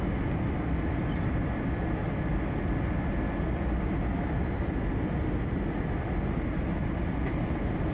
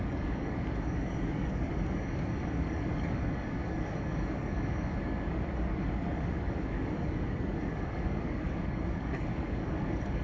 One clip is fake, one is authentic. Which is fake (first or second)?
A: second